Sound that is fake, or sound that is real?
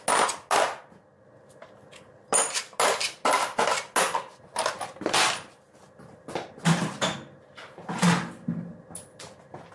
real